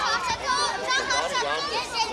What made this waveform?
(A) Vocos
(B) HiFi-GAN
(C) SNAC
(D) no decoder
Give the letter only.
D